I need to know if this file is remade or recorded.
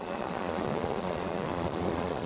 remade